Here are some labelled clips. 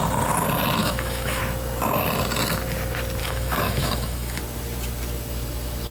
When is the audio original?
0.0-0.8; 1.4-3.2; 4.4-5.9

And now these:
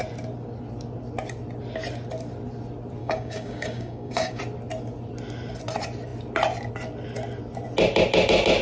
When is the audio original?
0.0-3.0; 4.4-8.6

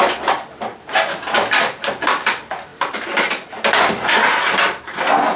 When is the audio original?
0.0-5.4

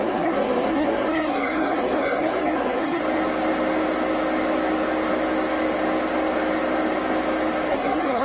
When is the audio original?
3.0-7.7

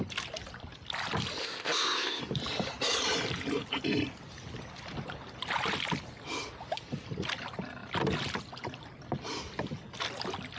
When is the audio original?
0.0-1.4; 2.2-10.6

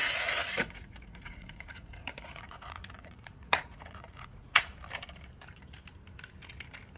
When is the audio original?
4.7-7.0